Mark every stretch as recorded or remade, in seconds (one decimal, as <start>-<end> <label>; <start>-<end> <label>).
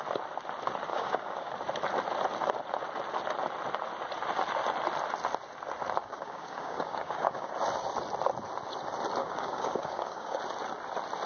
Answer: 0.0-0.9 recorded; 0.9-1.5 remade; 1.5-6.0 recorded; 6.0-7.5 remade; 7.5-9.2 recorded; 9.2-10.4 remade; 10.4-11.3 recorded